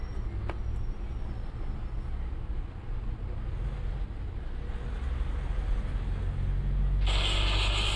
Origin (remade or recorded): recorded